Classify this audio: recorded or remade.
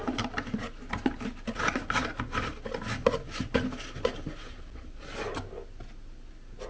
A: recorded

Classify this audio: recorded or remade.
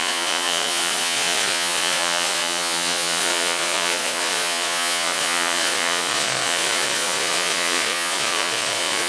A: remade